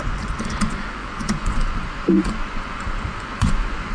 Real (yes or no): no